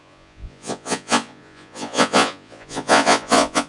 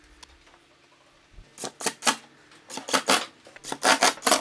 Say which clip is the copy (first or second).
first